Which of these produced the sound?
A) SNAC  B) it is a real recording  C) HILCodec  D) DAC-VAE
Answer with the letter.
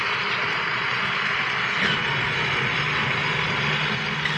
B